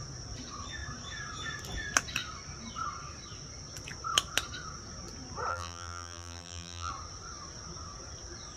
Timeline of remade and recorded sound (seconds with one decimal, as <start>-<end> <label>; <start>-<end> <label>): 0.0-5.5 recorded; 5.5-6.9 remade; 6.9-8.6 recorded